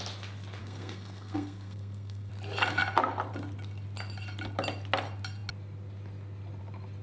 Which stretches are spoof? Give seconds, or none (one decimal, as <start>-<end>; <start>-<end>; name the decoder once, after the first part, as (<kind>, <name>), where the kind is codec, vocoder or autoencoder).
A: 0.6-2.3 (codec, SNAC)